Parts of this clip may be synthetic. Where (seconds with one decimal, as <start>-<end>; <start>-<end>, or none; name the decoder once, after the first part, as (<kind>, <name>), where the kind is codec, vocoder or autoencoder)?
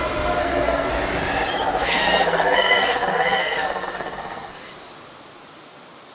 0.4-0.9 (codec, SNAC); 1.8-4.7